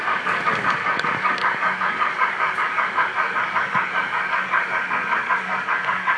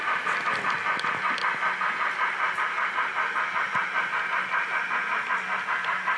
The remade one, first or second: first